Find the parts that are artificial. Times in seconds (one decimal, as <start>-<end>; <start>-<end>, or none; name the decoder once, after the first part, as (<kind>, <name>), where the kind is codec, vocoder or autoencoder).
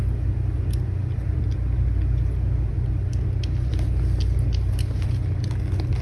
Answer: none